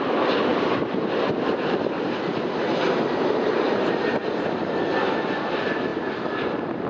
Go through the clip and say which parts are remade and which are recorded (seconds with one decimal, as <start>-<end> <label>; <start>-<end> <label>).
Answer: 0.0-0.5 recorded; 0.5-4.6 remade; 4.6-6.9 recorded